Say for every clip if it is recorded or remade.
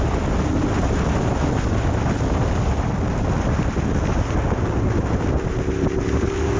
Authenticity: recorded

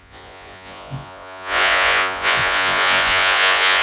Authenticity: remade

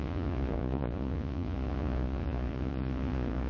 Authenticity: remade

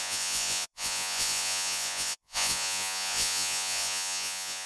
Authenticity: remade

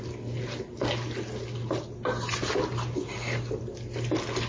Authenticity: recorded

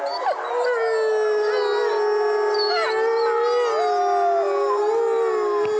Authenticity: recorded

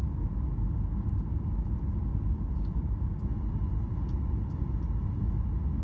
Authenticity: recorded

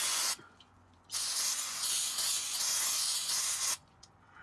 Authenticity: remade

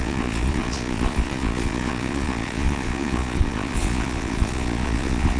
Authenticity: remade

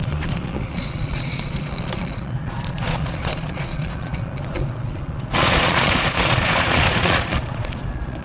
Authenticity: remade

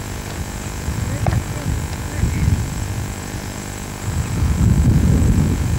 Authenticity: remade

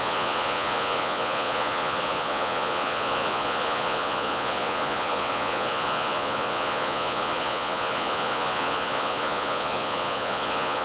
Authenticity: remade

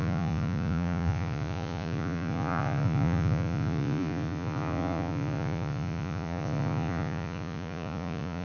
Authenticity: remade